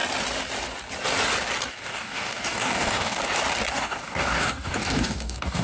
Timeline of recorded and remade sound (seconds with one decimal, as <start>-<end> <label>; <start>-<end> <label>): 0.0-1.7 recorded; 1.7-3.2 remade; 3.2-3.7 recorded; 3.7-5.6 remade